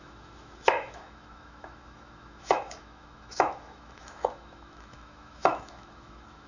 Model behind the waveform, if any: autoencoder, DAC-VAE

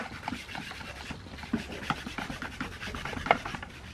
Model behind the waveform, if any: none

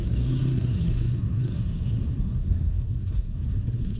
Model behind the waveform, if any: codec, SNAC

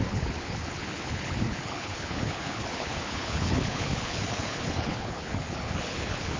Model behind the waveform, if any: codec, HILCodec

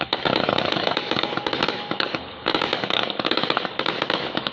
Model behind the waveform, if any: codec, DAC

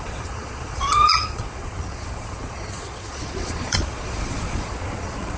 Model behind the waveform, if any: vocoder, Vocos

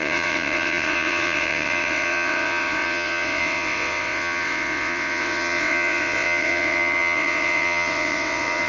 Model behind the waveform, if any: vocoder, WaveNeXt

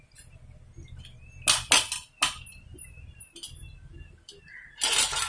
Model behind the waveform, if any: none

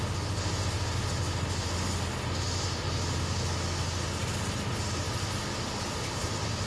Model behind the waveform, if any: none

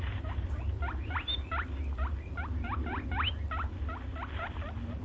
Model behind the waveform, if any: none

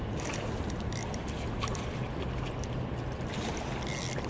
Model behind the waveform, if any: none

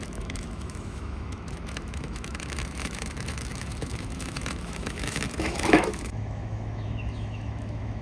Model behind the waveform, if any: autoencoder, DAC-VAE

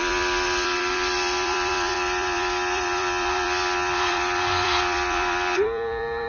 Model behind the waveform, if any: vocoder, BigVGAN v2